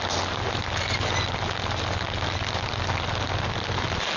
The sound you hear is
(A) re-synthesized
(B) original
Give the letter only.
B